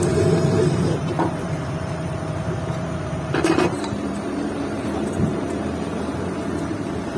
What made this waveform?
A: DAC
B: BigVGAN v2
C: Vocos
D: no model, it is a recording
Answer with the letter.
B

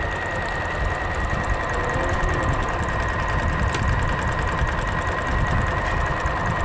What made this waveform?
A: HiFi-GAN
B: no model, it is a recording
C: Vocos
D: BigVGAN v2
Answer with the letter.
B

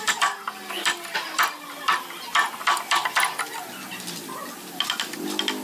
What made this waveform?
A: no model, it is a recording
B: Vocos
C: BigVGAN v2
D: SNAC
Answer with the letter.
A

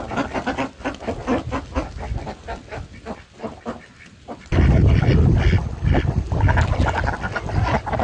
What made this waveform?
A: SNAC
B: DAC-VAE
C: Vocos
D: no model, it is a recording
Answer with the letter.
D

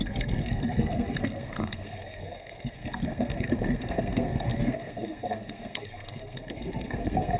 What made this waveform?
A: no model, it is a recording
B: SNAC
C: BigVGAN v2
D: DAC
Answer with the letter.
B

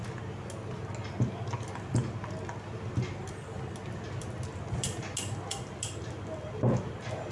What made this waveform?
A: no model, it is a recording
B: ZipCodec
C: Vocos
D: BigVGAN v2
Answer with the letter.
A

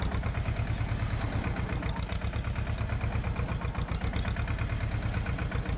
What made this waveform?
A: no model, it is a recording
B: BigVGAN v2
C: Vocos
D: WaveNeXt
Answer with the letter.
A